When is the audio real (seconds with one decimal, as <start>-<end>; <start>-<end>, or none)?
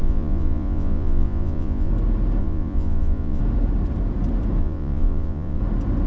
1.9-2.4; 3.4-4.6; 5.6-6.1